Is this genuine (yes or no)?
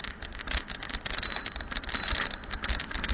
yes